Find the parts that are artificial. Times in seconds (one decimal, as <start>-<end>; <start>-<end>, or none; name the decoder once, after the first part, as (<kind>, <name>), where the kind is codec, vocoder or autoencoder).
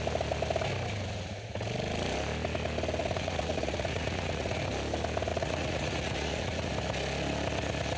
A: 3.0-4.6 (vocoder, Vocos); 5.3-6.7